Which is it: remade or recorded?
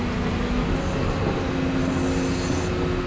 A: recorded